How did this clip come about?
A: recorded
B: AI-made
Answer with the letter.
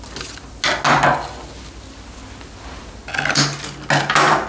A